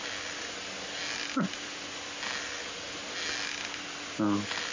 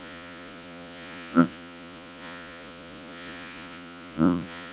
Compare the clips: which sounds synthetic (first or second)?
second